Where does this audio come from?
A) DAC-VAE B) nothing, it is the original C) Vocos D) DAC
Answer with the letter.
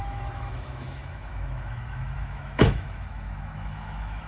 A